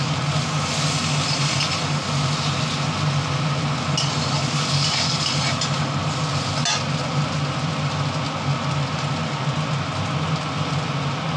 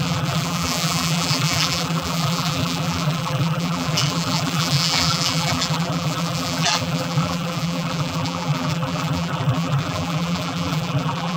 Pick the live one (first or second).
first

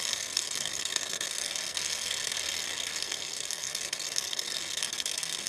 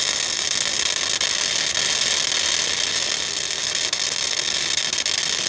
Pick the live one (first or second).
second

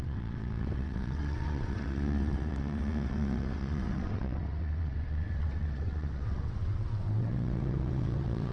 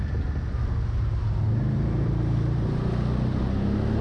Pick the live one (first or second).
second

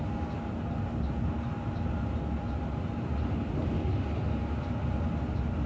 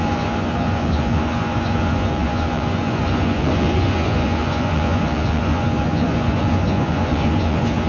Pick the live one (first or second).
first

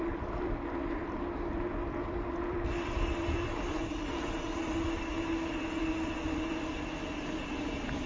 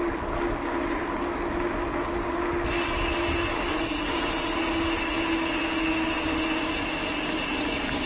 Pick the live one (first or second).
second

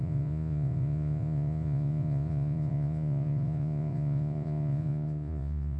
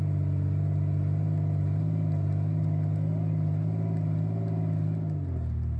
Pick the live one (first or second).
second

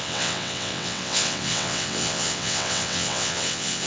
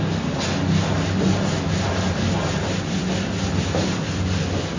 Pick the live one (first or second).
second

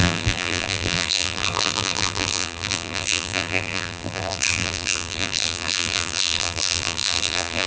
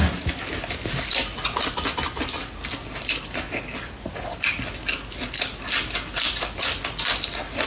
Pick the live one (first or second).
second